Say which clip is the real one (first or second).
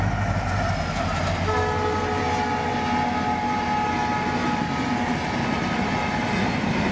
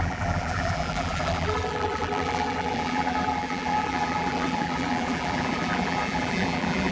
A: first